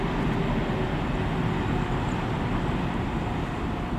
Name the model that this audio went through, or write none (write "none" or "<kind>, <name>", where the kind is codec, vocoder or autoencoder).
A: none